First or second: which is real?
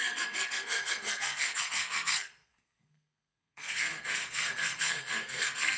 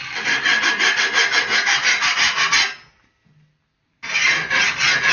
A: second